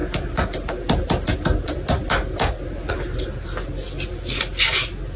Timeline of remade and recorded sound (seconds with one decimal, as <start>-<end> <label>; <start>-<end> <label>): 0.0-5.2 recorded